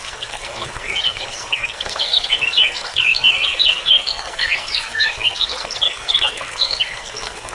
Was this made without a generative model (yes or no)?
no